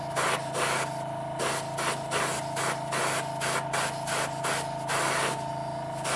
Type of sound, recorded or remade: recorded